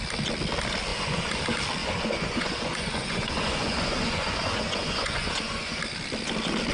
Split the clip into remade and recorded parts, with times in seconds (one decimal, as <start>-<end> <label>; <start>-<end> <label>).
0.0-0.9 recorded; 0.9-1.4 remade; 1.4-1.8 recorded; 1.8-5.8 remade; 5.8-6.7 recorded

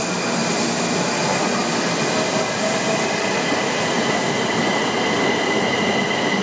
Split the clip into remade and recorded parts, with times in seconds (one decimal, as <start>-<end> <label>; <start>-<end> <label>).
0.0-6.4 recorded

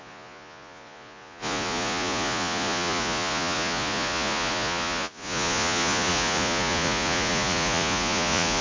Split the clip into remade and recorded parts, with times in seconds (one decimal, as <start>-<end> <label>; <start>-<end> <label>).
0.0-8.6 remade

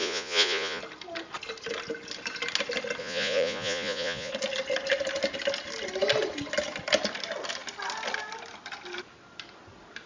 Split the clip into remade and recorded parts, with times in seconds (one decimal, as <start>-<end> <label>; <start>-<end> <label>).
0.0-0.8 remade; 0.8-3.0 recorded; 3.0-4.3 remade; 4.3-10.1 recorded

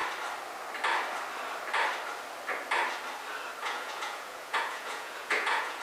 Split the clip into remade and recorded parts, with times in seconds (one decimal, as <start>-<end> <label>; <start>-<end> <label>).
0.0-3.6 recorded; 3.6-5.8 remade

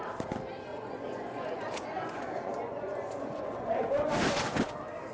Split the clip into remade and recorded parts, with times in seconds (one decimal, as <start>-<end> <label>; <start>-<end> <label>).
0.0-0.7 recorded; 0.7-3.8 remade; 3.8-5.1 recorded

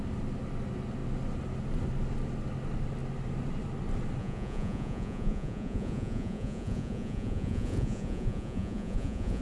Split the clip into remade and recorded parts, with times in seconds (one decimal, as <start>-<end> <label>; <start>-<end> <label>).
0.0-4.2 recorded; 4.2-9.4 remade

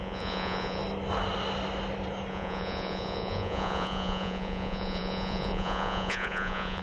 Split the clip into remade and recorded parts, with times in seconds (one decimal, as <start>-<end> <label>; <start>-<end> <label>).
0.0-0.8 remade; 0.8-2.3 recorded; 2.3-6.8 remade